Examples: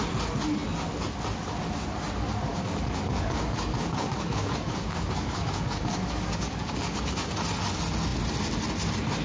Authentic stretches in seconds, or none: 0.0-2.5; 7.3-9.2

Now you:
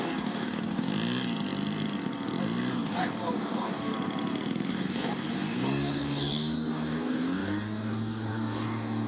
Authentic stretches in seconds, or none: 0.9-2.7; 3.9-4.7

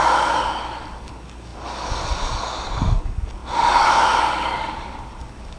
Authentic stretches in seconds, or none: none